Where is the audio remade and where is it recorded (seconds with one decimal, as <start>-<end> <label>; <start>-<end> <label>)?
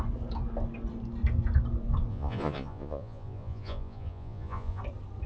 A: 0.0-2.1 recorded; 2.1-4.8 remade; 4.8-5.3 recorded